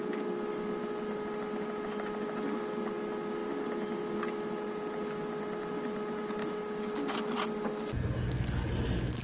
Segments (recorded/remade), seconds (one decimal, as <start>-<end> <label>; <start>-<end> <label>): 0.0-9.2 recorded